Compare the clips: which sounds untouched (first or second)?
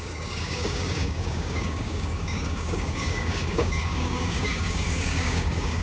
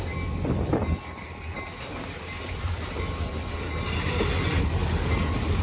second